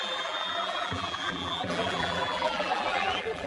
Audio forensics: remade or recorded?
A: remade